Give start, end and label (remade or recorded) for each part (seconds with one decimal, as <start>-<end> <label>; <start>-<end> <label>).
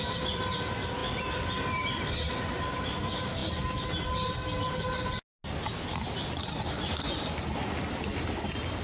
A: 0.0-8.8 recorded